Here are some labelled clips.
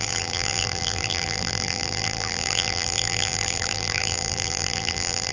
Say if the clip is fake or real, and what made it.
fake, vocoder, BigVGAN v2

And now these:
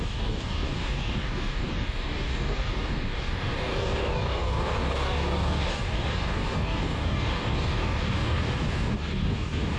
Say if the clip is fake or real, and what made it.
fake, codec, DAC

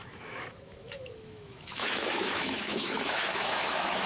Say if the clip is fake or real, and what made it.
fake, autoencoder, DAC-VAE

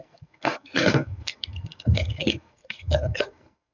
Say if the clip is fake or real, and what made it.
fake, codec, SNAC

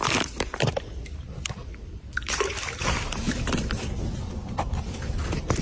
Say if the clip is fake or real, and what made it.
fake, vocoder, BigVGAN v2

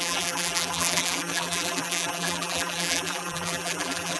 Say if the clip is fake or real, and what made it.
fake, vocoder, BigVGAN v2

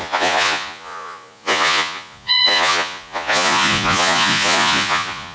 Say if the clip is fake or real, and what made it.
fake, vocoder, Vocos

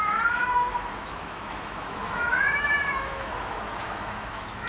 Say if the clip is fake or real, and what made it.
fake, autoencoder, DAC-VAE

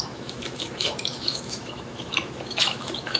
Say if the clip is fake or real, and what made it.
fake, autoencoder, DAC-VAE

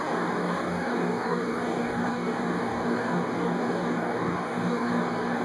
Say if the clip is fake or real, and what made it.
fake, codec, DAC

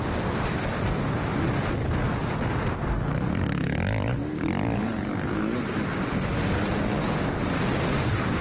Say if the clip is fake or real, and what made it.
real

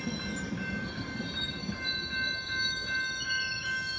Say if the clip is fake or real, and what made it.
real